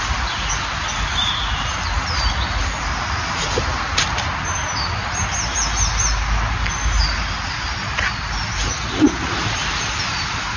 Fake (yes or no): no